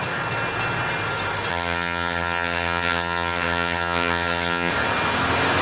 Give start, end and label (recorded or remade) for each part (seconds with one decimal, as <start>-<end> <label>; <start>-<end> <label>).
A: 0.0-1.5 recorded; 1.5-4.7 remade; 4.7-5.6 recorded